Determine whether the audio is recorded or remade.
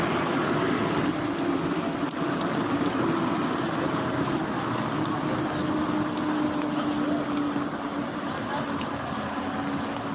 recorded